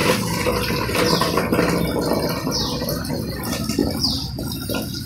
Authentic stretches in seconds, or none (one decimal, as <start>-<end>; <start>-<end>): 0.0-3.8; 4.4-5.1